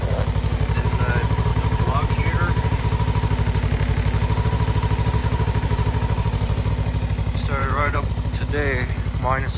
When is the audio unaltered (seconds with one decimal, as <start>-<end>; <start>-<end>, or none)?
0.0-1.5; 2.8-5.2; 6.7-7.6; 8.1-9.6